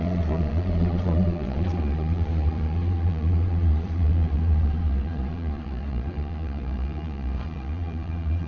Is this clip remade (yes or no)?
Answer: yes